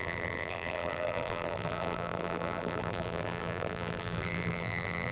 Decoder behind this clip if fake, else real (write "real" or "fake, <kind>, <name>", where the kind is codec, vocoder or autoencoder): fake, vocoder, BigVGAN v2